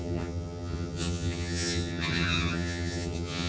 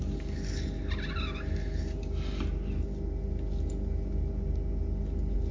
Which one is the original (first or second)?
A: second